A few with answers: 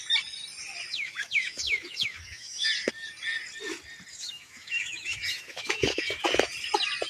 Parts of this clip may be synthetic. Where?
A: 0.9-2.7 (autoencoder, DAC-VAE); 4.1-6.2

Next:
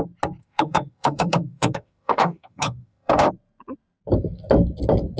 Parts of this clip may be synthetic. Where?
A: 0.4-3.3 (autoencoder, DAC-VAE)

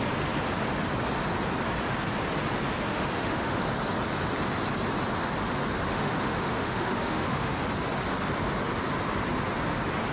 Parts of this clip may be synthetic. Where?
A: 2.9-3.6 (autoencoder, DAC-VAE); 5.9-7.5

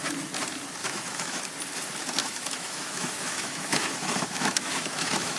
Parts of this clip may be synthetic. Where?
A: 0.8-1.4 (autoencoder, DAC-VAE); 2.2-5.4

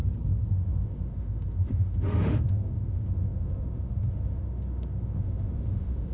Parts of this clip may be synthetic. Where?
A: 0.5-6.1 (autoencoder, DAC-VAE)

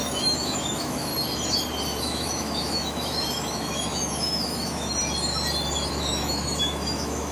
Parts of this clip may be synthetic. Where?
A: 0.0-1.1 (autoencoder, DAC-VAE); 2.0-5.0; 5.9-7.3

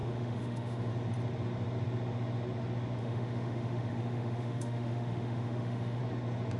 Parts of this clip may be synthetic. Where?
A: 0.0-0.9 (autoencoder, DAC-VAE); 3.0-6.0